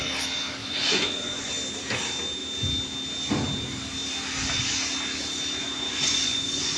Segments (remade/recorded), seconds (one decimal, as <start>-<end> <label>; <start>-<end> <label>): 0.0-0.6 recorded; 0.6-1.5 remade; 1.5-5.6 recorded; 5.6-6.8 remade